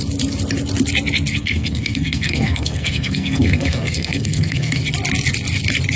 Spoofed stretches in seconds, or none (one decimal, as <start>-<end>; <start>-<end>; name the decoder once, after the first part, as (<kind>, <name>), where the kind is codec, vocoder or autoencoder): 1.4-4.8 (codec, SNAC)